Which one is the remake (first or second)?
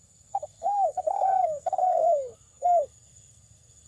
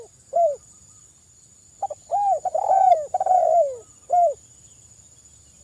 first